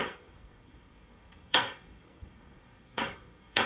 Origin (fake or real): fake